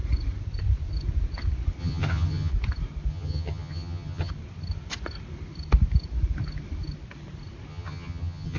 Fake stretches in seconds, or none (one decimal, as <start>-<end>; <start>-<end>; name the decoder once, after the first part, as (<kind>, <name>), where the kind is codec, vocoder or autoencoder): 1.8-2.5 (vocoder, HiFi-GAN); 3.1-4.3; 7.7-8.6

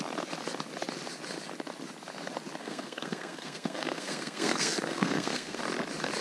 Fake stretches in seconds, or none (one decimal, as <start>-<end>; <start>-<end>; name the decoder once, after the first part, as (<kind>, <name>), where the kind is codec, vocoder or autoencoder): 2.6-5.6 (codec, SNAC)

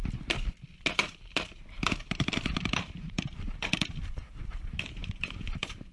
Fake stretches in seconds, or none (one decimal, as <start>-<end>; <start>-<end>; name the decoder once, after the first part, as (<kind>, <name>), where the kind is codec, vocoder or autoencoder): 1.0-4.5 (vocoder, BigVGAN v2); 5.0-5.9

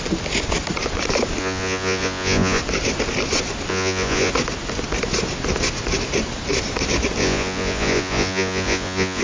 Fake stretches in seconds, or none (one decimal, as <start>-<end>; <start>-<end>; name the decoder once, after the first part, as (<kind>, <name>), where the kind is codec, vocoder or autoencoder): 1.4-2.6 (vocoder, Vocos); 3.7-4.3; 7.2-9.2

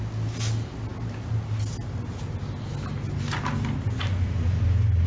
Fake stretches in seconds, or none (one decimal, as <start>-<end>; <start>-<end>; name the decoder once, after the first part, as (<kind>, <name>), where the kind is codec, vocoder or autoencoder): none

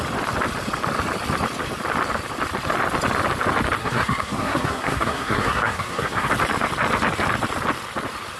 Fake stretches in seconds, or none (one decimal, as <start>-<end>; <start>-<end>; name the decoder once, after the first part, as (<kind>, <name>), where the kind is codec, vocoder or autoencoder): 3.8-6.3 (codec, SNAC)